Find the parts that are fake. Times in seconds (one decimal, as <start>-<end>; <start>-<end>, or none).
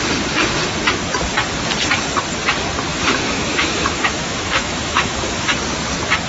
2.9-5.5